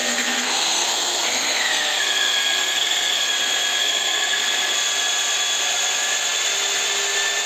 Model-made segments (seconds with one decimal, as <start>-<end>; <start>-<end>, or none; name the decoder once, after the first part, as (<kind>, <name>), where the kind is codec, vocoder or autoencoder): 0.0-3.3 (codec, SNAC); 3.8-4.4